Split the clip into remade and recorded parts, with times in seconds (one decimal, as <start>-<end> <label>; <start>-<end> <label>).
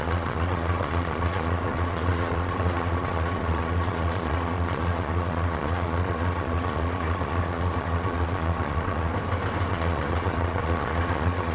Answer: 0.0-9.1 remade; 9.1-9.7 recorded; 9.7-11.5 remade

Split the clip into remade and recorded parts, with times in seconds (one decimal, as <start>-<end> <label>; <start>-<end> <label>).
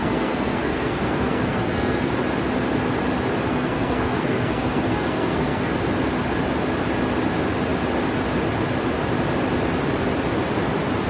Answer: 0.0-2.1 remade; 2.1-3.5 recorded; 3.5-5.7 remade; 5.7-11.1 recorded